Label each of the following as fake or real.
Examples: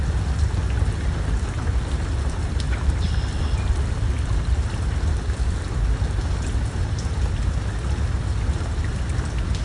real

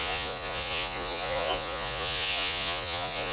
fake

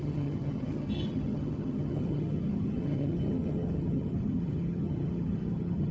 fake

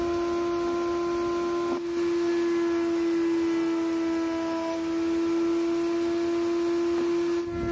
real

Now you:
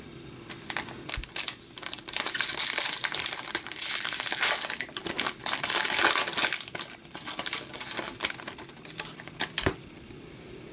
real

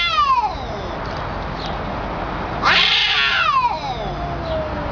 real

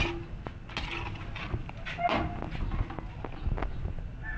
real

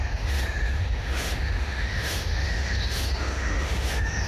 fake